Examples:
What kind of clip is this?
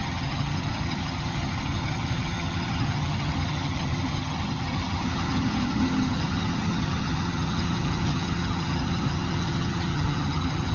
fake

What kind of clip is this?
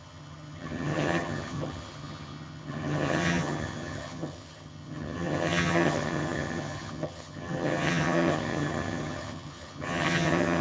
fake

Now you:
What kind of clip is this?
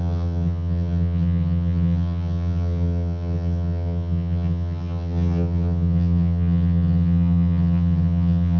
fake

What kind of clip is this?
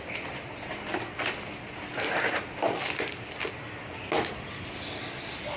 real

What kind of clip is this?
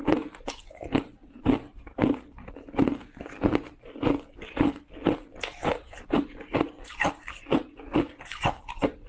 real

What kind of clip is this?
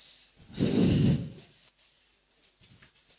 real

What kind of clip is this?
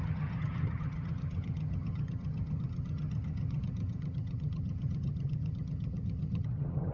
fake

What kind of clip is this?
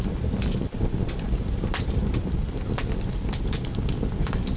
real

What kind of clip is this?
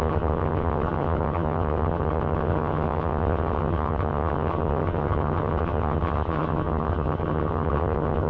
fake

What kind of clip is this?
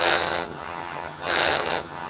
fake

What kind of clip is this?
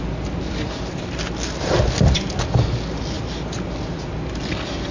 real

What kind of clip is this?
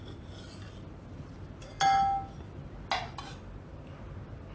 real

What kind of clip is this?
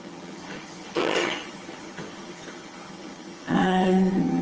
fake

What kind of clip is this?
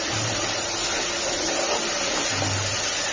real